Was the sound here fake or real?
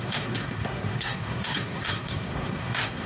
fake